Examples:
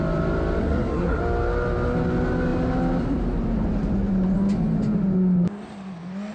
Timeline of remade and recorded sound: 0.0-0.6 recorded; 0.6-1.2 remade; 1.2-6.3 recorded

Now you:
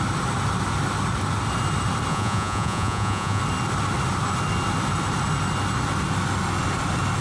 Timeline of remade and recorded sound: 0.0-2.1 recorded; 2.1-3.4 remade; 3.4-7.2 recorded

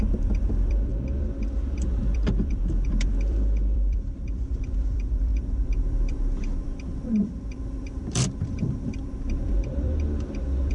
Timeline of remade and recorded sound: 0.0-0.9 remade; 0.9-1.4 recorded; 1.4-10.7 remade

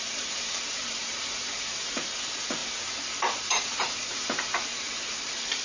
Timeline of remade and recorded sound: 0.0-5.6 remade

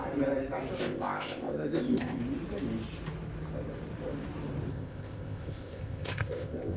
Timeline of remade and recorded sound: 0.0-0.8 recorded; 0.8-2.2 remade; 2.2-4.7 recorded; 4.7-6.8 remade

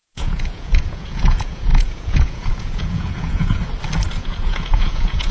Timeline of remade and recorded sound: 0.0-3.6 remade; 3.6-4.2 recorded; 4.2-5.3 remade

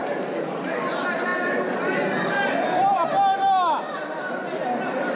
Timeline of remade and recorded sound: 0.0-5.2 recorded